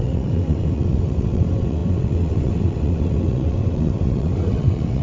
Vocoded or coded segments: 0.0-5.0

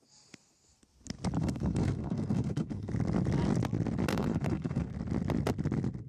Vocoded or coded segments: 1.4-2.9; 4.1-4.9

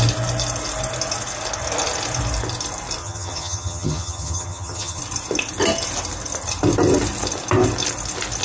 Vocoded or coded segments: 3.0-5.0

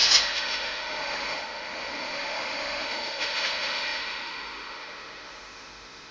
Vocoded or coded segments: 0.0-6.1

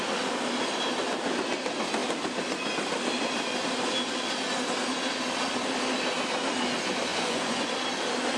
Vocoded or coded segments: 7.1-7.7

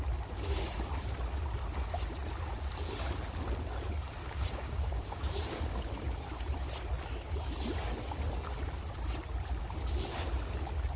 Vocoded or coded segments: 4.2-5.4